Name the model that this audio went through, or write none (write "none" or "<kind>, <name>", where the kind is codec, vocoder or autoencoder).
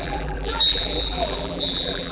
vocoder, BigVGAN v2